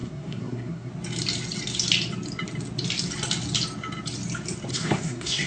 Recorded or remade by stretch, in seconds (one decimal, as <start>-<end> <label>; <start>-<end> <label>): 0.0-0.9 remade; 0.9-4.7 recorded; 4.7-5.5 remade